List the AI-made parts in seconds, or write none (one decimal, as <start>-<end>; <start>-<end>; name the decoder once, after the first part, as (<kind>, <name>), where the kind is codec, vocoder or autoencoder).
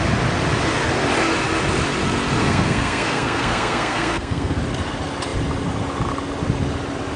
2.4-4.6 (codec, SNAC)